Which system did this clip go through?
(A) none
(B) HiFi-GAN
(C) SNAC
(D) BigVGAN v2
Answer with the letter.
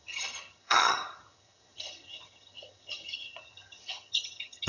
B